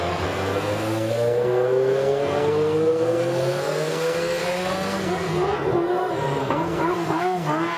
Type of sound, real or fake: fake